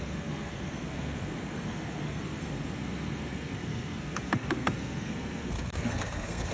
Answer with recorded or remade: remade